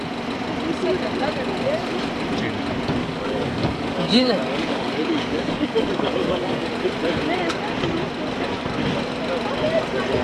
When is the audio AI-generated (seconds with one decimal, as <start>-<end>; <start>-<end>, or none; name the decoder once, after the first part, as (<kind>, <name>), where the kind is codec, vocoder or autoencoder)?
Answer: 3.0-6.7 (codec, DAC)

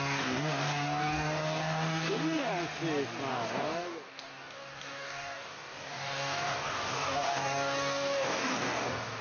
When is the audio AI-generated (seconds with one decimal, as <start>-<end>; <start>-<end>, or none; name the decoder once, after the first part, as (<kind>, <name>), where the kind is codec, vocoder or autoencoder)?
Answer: 0.0-2.5 (codec, DAC); 3.3-9.2

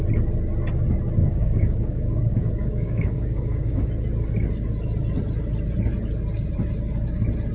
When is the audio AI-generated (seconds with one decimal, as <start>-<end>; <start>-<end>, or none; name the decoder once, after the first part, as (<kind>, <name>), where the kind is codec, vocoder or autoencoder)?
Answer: 1.2-3.9 (codec, DAC)

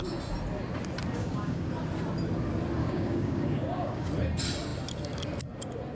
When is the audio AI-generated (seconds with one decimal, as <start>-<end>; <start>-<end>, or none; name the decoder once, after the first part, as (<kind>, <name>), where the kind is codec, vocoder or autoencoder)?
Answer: 1.2-1.7 (codec, DAC); 2.8-4.1

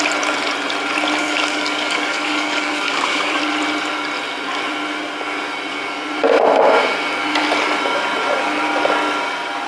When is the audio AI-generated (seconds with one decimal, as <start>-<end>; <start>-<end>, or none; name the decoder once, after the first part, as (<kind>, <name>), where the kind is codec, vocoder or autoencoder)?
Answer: 1.2-3.4 (codec, DAC)

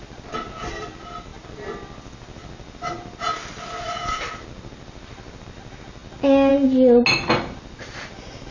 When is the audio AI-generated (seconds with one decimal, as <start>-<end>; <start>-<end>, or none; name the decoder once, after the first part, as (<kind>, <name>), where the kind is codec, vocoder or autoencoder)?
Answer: none

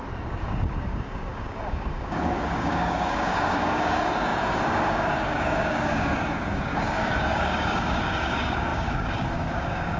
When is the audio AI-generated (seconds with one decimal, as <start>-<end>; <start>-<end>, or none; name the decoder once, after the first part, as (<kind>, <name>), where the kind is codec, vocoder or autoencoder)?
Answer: 0.0-10.0 (codec, DAC)

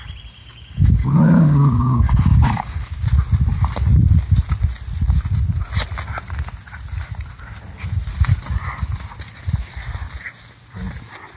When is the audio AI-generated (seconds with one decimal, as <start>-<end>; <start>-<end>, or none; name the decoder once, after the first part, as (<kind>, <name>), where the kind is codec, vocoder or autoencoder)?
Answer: 0.4-2.8 (codec, DAC)